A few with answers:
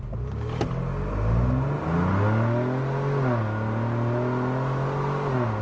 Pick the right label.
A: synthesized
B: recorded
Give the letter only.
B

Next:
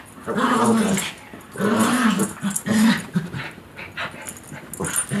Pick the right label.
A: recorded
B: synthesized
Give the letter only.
A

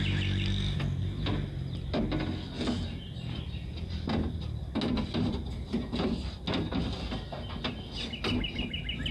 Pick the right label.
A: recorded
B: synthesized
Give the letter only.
A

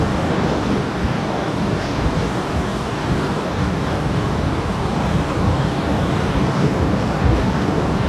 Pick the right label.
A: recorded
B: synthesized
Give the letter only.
B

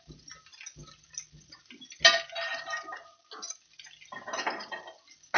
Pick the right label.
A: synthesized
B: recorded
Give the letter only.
B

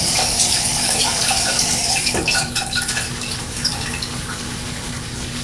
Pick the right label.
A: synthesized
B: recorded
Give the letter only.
A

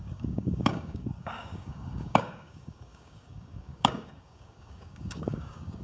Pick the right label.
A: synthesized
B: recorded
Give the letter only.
A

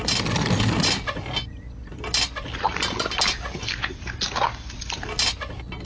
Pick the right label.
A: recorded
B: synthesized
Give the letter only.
A